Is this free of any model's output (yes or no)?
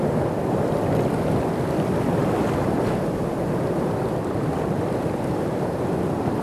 yes